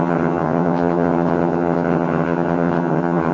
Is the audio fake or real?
fake